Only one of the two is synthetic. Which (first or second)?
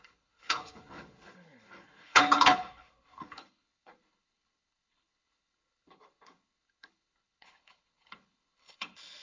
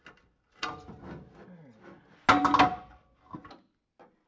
first